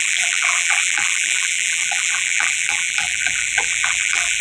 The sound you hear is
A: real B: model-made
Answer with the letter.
B